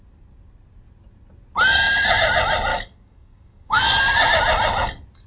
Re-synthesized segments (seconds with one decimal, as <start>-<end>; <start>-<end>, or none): 2.7-4.0